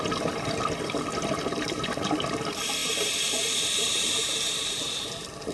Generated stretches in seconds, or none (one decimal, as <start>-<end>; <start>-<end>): 2.8-3.3; 3.9-5.0